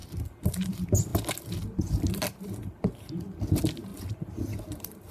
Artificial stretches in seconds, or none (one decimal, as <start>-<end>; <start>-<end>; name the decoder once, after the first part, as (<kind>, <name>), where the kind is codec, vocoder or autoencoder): none